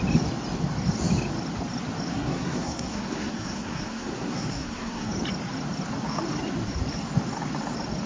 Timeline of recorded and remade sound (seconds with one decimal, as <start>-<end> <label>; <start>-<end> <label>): 0.0-2.1 recorded; 2.1-5.1 remade; 5.1-8.1 recorded